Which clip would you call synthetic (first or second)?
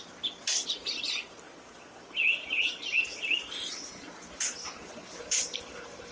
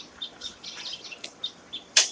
second